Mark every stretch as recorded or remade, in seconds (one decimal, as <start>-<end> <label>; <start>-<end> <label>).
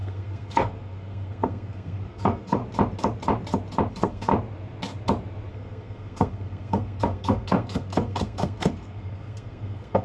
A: 0.0-2.6 remade; 2.6-3.9 recorded; 3.9-4.3 remade; 4.3-5.5 recorded; 5.5-10.0 remade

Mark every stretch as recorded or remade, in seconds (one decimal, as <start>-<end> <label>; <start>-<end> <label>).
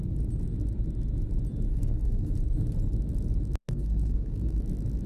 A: 0.0-1.7 recorded; 1.7-2.3 remade; 2.3-3.6 recorded; 3.6-4.6 remade; 4.6-5.1 recorded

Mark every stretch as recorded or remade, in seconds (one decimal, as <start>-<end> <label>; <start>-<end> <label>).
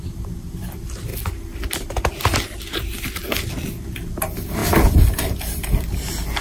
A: 0.0-6.4 recorded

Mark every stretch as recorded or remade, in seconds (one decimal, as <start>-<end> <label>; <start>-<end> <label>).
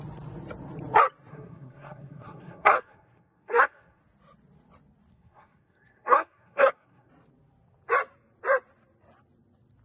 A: 0.0-1.3 recorded; 1.3-4.0 remade; 4.0-5.1 recorded; 5.1-7.1 remade; 7.1-9.8 recorded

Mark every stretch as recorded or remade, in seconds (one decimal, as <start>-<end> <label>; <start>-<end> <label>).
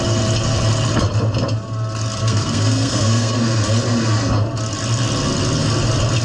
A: 0.0-2.2 recorded; 2.2-3.4 remade; 3.4-6.2 recorded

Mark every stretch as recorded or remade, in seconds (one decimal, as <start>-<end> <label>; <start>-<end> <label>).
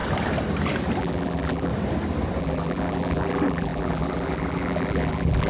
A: 0.0-1.0 recorded; 1.0-1.7 remade; 1.7-2.4 recorded; 2.4-5.5 remade